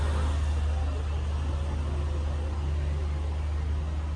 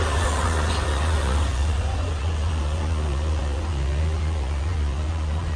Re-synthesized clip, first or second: second